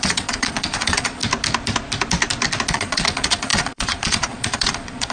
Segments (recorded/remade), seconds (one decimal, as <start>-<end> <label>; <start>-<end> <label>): 0.0-1.2 remade; 1.2-2.7 recorded; 2.7-5.1 remade